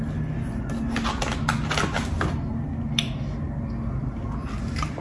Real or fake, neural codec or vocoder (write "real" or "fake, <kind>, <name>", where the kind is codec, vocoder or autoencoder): real